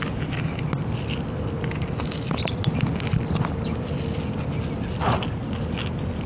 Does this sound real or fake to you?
real